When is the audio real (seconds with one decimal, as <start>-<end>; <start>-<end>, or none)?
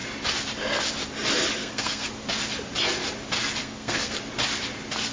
0.0-1.6; 2.1-3.6; 4.2-5.1